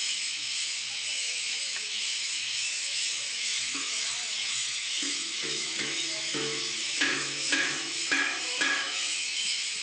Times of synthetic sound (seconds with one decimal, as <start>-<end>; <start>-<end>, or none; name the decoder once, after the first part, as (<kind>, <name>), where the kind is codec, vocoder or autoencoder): 0.0-9.8 (autoencoder, DAC-VAE)